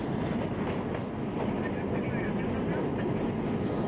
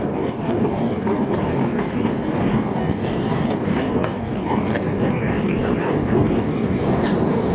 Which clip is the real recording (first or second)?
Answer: first